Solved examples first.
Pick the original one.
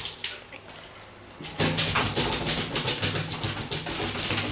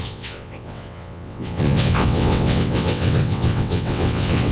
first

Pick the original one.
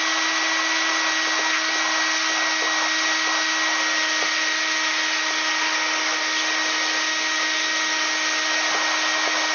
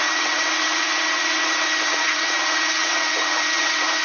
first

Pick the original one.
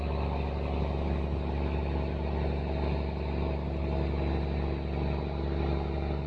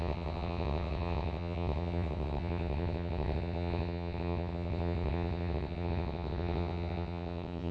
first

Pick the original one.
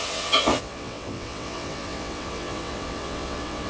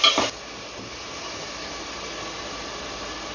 second